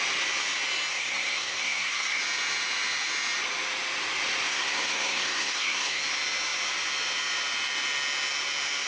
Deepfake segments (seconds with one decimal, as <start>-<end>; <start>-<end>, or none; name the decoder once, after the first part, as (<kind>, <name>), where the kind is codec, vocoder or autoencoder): 0.9-2.2 (codec, SNAC); 4.5-6.0

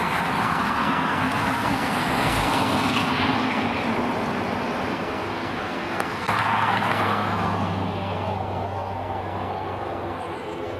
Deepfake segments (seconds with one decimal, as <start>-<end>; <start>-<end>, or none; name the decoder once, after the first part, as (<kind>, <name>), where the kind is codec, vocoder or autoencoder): 0.0-3.7 (codec, SNAC); 4.9-10.8

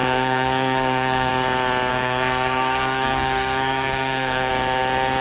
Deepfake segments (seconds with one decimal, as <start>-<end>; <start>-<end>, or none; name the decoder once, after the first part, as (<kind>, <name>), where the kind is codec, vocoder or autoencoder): 0.0-1.3 (codec, SNAC); 1.9-4.5

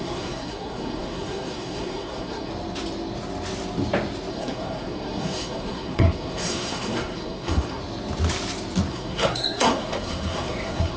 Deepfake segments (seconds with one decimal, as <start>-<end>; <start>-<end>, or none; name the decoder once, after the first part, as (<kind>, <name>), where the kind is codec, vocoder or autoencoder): 0.0-2.5 (codec, SNAC); 4.3-7.8; 8.9-11.0

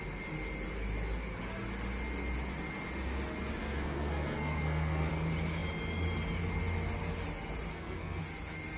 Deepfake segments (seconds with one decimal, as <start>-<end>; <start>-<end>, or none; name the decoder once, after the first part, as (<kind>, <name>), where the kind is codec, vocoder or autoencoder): 3.6-5.1 (codec, SNAC); 7.7-8.2

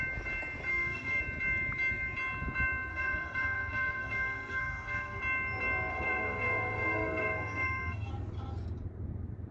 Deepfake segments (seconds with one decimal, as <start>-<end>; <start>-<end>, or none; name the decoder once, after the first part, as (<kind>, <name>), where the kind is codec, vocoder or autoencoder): 0.7-1.2 (codec, SNAC); 2.9-5.2; 5.9-8.1